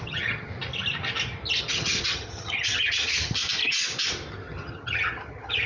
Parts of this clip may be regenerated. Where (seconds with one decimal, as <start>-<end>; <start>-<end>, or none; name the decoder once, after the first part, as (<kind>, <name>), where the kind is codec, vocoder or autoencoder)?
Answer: 0.0-0.5 (vocoder, HiFi-GAN); 1.6-3.4; 4.3-5.7